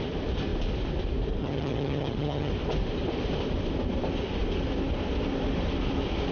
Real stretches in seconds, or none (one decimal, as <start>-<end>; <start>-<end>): 0.0-1.4; 2.5-6.3